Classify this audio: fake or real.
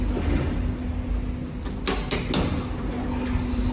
real